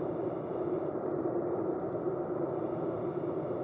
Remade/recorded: remade